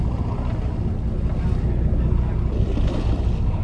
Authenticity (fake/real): real